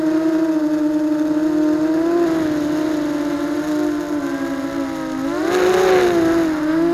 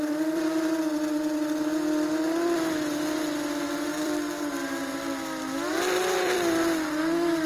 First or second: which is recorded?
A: first